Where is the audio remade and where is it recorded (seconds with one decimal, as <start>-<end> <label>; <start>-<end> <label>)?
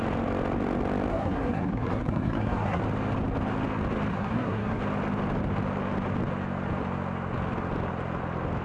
0.0-1.1 recorded; 1.1-2.8 remade; 2.8-4.1 recorded; 4.1-4.8 remade; 4.8-8.6 recorded